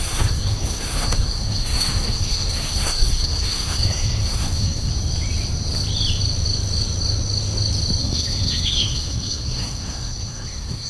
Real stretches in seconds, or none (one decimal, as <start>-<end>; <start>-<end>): 4.9-8.0